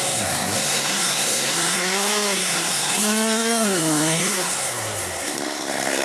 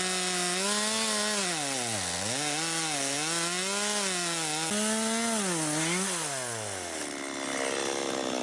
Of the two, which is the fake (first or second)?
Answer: first